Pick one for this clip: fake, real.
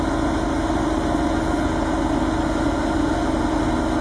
real